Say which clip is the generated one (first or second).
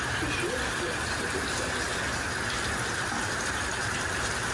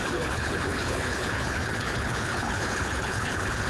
second